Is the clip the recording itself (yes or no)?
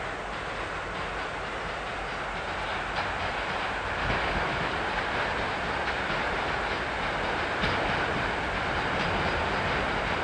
yes